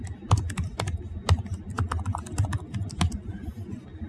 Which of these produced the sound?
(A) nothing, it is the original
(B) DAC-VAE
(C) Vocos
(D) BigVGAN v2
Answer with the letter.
A